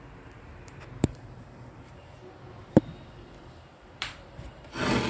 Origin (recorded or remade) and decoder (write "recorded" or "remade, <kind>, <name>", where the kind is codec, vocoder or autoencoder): remade, vocoder, BigVGAN v2